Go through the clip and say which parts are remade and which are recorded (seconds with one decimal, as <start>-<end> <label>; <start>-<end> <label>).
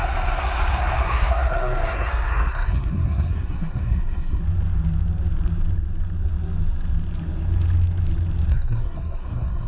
0.0-4.4 remade; 4.4-8.5 recorded; 8.5-9.7 remade